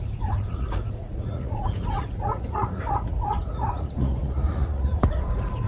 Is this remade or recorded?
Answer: remade